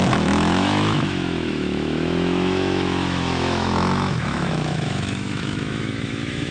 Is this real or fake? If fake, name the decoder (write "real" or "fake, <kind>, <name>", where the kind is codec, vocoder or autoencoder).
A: fake, autoencoder, DAC-VAE